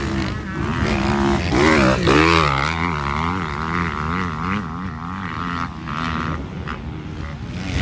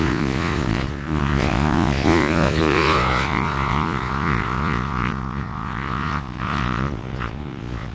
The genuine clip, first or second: first